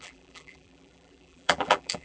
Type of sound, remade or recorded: remade